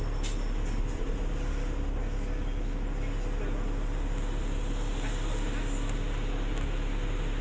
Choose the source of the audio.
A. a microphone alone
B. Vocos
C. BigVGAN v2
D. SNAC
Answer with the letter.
A